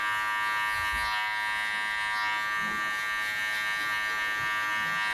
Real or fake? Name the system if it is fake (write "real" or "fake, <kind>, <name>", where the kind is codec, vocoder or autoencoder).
real